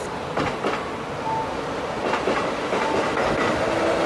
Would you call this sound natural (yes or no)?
yes